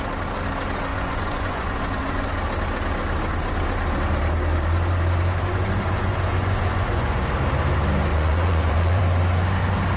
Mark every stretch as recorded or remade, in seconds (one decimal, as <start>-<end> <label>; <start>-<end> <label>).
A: 0.0-0.9 recorded; 0.9-2.3 remade; 2.3-5.5 recorded; 5.5-7.3 remade; 7.3-8.1 recorded; 8.1-9.0 remade; 9.0-10.0 recorded